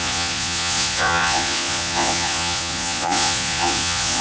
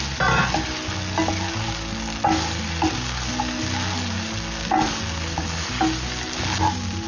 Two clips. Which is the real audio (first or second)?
second